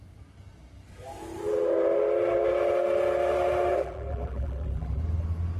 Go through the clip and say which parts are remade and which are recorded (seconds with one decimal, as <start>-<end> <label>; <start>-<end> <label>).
0.0-3.7 recorded; 3.7-5.0 remade; 5.0-5.6 recorded